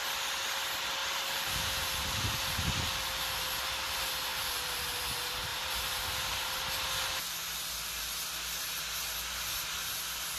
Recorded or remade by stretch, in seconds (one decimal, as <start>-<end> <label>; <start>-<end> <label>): 0.0-1.0 recorded; 1.0-2.4 remade; 2.4-4.3 recorded; 4.3-5.0 remade; 5.0-5.5 recorded; 5.5-6.3 remade; 6.3-10.4 recorded